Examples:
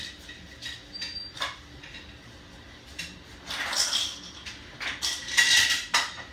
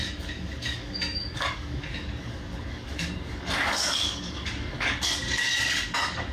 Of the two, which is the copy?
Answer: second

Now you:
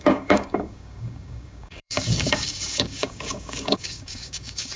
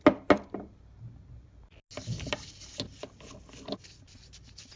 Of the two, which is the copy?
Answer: first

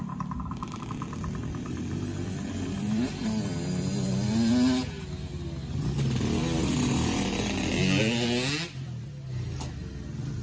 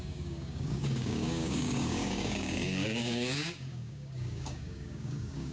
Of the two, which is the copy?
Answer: second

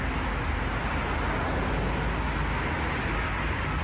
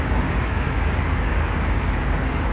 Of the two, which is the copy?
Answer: second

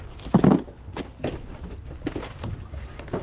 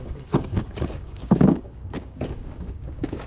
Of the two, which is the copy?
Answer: second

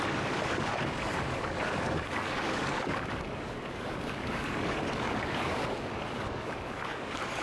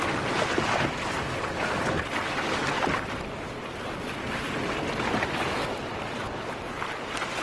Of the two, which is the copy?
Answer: first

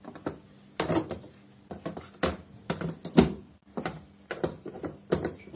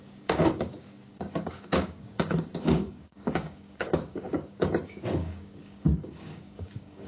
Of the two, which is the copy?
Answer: second